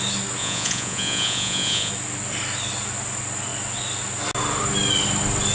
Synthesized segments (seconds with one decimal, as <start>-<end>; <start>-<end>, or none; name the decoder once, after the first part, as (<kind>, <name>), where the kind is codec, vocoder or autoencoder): 0.4-1.9 (vocoder, Vocos)